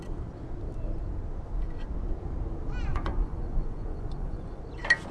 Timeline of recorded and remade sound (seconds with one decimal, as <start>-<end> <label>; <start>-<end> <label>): 0.0-2.9 recorded; 2.9-4.6 remade; 4.6-5.1 recorded